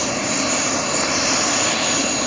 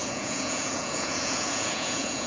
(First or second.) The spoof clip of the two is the second